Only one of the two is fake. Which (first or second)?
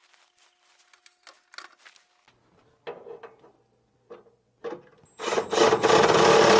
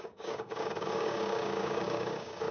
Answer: second